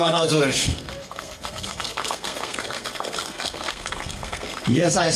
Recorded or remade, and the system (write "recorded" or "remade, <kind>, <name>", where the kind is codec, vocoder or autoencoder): remade, codec, SNAC